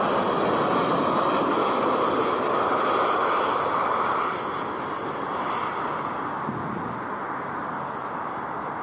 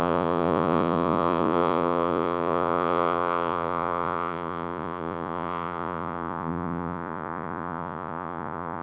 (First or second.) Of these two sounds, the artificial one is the second